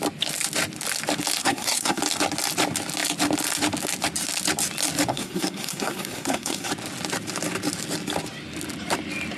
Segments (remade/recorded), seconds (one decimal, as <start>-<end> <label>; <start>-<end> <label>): 0.0-1.4 recorded; 1.4-2.0 remade; 2.0-5.1 recorded; 5.1-6.7 remade; 6.7-9.4 recorded